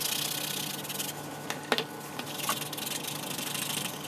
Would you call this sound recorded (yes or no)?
yes